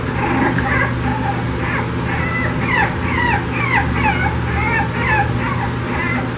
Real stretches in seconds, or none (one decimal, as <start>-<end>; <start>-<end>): 0.0-6.4